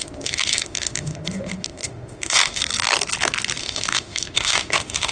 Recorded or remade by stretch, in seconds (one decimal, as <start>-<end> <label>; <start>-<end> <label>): 0.0-2.6 remade; 2.6-3.6 recorded; 3.6-5.1 remade